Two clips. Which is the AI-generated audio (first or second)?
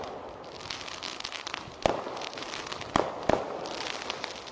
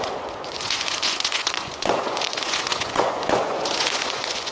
second